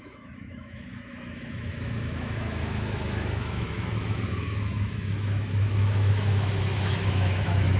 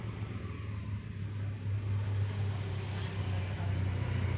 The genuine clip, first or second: second